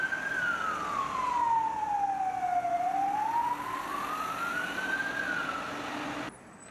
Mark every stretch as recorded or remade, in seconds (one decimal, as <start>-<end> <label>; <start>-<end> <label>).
0.0-6.7 recorded